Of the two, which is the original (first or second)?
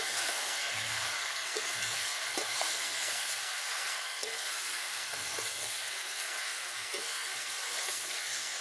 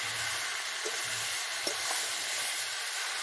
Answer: second